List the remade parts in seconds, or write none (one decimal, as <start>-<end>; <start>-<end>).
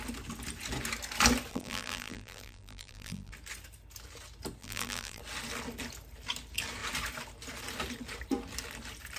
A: 1.5-3.3; 4.6-5.2